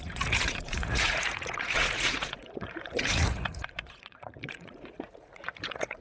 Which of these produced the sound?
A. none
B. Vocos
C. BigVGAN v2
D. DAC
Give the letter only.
B